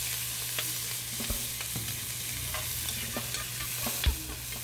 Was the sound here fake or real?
real